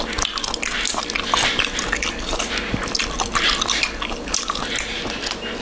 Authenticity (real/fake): real